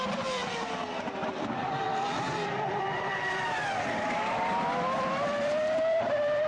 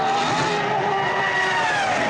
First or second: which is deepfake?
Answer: first